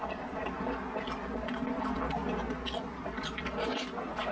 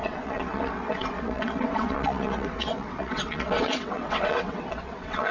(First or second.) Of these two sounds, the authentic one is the first